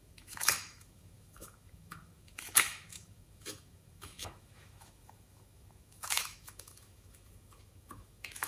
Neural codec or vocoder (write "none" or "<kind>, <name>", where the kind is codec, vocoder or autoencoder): autoencoder, DAC-VAE